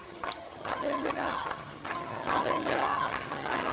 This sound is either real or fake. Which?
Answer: fake